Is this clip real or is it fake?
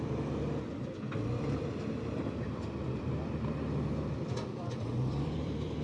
fake